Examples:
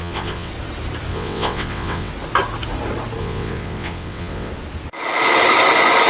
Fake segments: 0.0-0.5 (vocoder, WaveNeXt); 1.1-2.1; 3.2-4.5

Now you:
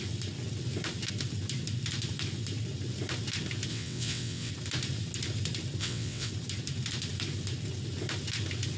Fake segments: 3.7-4.5 (vocoder, WaveNeXt); 5.8-6.3

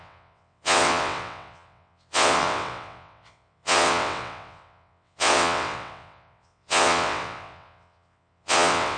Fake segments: 0.0-9.0 (vocoder, WaveNeXt)

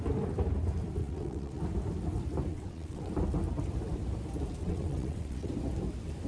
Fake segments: 1.0-1.6 (vocoder, WaveNeXt); 2.5-3.1; 4.6-5.5

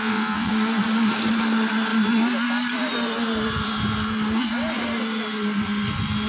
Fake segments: 0.0-0.5 (vocoder, WaveNeXt)